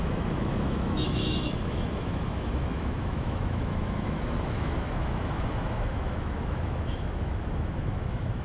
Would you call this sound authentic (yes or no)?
no